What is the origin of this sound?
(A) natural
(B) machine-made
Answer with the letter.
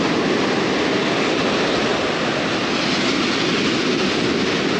A